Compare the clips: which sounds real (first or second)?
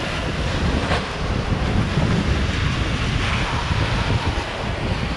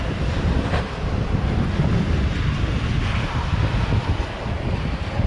first